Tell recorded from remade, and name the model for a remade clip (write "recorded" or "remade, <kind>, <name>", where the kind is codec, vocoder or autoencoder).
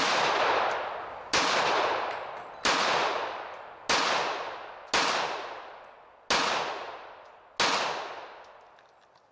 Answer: recorded